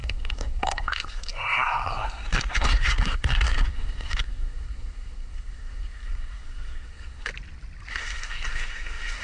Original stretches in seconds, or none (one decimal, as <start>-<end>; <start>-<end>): 7.3-7.9